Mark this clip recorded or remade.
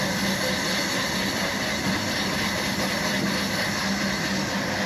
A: recorded